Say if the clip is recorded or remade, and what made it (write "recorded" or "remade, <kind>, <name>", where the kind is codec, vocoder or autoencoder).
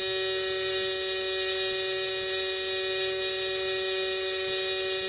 recorded